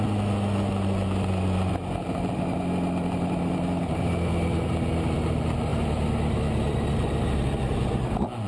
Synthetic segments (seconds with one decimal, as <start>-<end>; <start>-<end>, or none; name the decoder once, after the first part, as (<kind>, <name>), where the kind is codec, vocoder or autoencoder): none